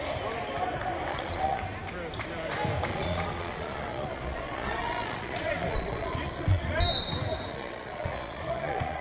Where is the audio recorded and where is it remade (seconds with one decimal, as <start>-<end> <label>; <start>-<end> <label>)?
0.0-1.1 recorded; 1.1-1.6 remade; 1.6-2.9 recorded; 2.9-6.8 remade; 6.8-7.5 recorded; 7.5-9.0 remade